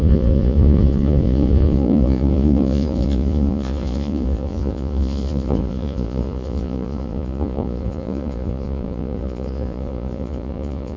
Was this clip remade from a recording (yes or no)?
yes